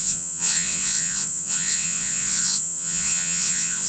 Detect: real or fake fake